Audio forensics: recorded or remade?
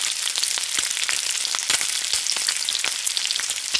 recorded